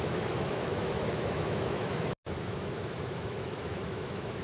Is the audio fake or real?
fake